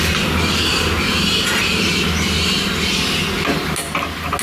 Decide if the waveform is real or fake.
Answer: real